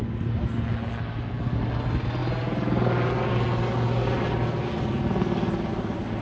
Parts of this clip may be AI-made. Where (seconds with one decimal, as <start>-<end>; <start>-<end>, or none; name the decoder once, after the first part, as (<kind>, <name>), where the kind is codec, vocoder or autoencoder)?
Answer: none